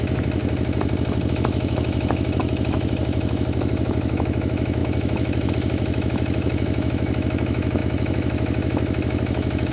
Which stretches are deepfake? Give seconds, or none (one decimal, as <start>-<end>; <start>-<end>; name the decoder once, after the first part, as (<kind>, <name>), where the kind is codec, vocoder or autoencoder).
0.0-0.4 (autoencoder, DAC-VAE); 1.3-9.7